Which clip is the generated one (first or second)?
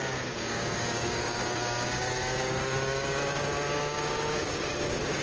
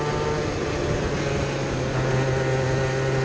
first